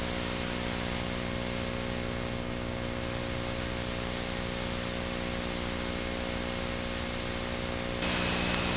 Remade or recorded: recorded